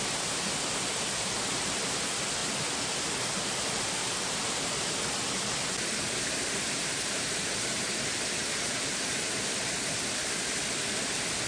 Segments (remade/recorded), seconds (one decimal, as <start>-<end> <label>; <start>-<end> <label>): 0.0-11.5 recorded